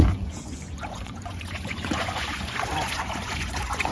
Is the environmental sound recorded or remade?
remade